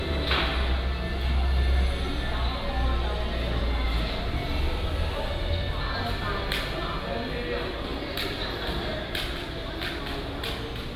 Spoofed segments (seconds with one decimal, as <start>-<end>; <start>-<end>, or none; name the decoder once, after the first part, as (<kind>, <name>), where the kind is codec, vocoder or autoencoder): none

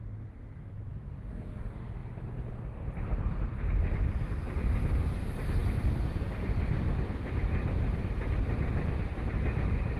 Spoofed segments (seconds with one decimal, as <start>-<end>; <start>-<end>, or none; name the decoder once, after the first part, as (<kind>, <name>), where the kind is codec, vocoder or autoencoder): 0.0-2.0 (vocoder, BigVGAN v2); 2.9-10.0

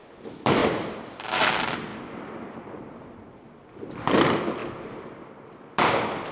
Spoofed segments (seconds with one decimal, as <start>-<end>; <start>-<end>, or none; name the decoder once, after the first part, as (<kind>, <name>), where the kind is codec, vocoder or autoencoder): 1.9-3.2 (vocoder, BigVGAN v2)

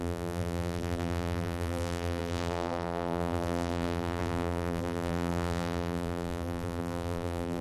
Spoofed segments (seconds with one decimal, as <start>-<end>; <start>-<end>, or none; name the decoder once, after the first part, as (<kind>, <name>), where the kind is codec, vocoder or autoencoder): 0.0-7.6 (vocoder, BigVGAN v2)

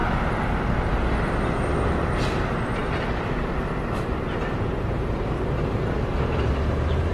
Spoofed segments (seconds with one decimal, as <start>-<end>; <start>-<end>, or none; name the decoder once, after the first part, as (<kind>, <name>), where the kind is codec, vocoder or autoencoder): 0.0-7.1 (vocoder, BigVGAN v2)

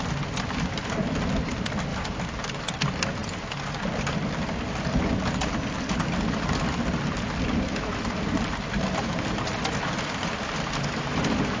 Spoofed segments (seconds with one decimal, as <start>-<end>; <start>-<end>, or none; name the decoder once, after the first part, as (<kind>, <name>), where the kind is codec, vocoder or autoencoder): none

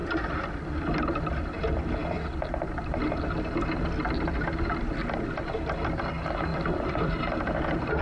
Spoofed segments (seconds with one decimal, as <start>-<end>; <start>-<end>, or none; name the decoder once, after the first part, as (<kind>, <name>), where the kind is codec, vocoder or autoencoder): 0.0-0.6 (vocoder, BigVGAN v2); 2.0-3.8; 6.5-7.6